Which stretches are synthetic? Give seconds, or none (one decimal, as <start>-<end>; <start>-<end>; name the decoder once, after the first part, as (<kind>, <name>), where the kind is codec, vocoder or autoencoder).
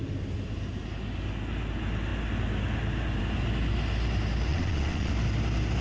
4.5-5.1 (vocoder, WaveNeXt)